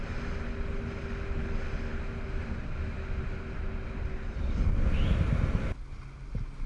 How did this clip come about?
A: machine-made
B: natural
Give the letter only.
B